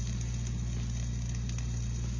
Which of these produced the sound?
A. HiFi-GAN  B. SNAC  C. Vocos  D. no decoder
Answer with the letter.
D